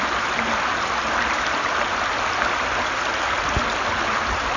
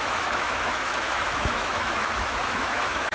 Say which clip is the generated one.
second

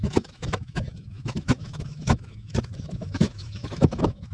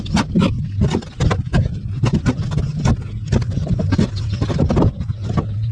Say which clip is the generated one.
first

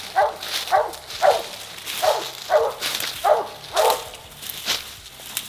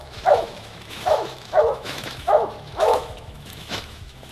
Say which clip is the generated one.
second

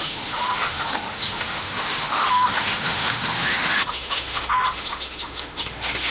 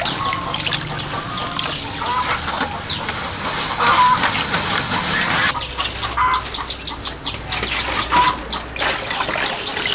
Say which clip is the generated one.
first